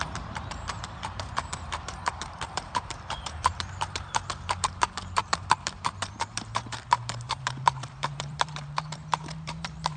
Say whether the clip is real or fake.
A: fake